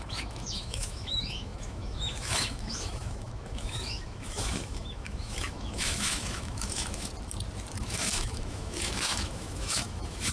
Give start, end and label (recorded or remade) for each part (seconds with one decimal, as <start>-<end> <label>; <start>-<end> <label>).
0.0-7.1 remade; 7.1-7.8 recorded; 7.8-10.3 remade